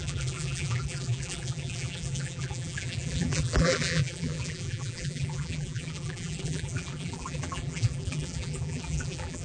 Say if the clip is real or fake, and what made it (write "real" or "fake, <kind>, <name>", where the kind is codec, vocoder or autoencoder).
fake, vocoder, BigVGAN v2